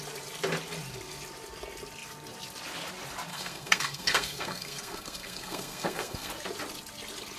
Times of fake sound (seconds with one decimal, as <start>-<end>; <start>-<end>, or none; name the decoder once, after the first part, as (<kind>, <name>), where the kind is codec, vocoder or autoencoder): 3.3-6.3 (codec, SNAC)